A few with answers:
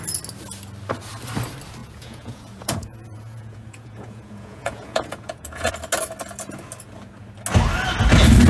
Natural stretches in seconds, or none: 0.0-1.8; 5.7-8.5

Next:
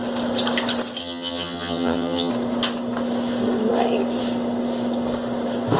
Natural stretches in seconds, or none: 0.0-1.0; 2.3-5.8